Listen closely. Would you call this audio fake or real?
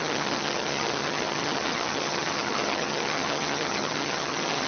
fake